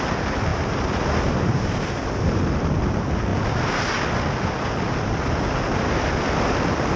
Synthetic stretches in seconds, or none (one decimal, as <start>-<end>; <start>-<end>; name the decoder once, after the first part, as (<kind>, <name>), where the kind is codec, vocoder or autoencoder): none